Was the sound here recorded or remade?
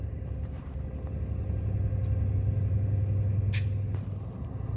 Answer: recorded